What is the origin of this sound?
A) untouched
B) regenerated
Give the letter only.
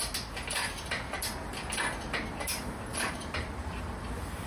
A